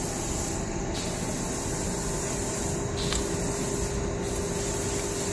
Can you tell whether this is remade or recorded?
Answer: recorded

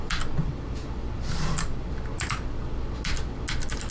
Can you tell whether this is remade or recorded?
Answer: recorded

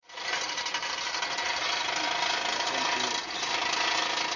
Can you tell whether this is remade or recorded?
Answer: recorded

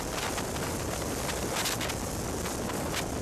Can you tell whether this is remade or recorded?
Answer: recorded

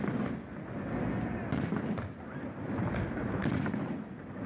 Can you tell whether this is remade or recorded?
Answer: recorded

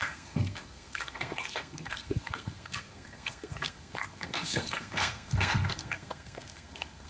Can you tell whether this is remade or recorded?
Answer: remade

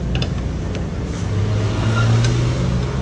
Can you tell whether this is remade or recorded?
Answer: recorded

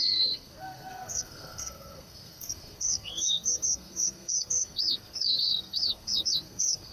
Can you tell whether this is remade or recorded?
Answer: remade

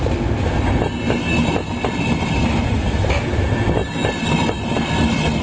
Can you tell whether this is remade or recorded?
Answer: recorded